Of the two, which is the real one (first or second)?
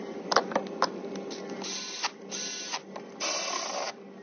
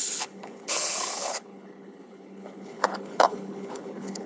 first